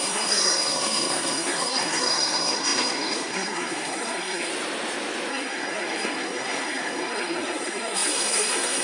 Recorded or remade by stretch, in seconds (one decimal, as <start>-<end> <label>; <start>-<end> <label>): 0.0-4.5 remade; 4.5-5.3 recorded; 5.3-8.8 remade

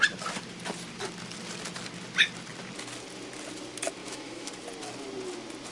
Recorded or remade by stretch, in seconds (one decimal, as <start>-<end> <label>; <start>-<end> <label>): 0.0-4.0 recorded; 4.0-4.5 remade; 4.5-5.7 recorded

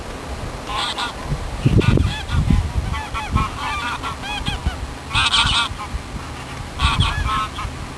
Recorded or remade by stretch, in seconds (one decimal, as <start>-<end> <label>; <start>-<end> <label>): 0.0-1.3 recorded; 1.3-2.6 remade; 2.6-8.0 recorded

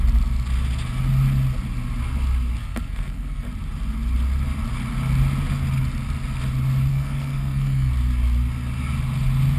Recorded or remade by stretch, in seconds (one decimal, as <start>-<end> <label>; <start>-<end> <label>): 0.0-2.6 recorded; 2.6-3.5 remade; 3.5-6.9 recorded; 6.9-7.9 remade; 7.9-9.6 recorded

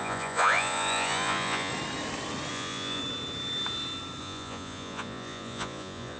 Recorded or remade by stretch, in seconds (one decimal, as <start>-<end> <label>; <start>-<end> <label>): 0.0-1.7 remade; 1.7-2.5 recorded; 2.5-3.0 remade; 3.0-4.2 recorded; 4.2-6.2 remade

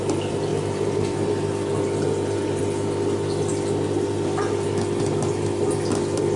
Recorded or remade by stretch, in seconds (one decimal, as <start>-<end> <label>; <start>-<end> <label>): 0.0-6.4 recorded